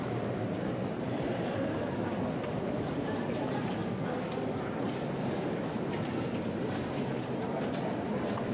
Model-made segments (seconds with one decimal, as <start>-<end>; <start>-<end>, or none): 0.0-3.8; 5.5-8.5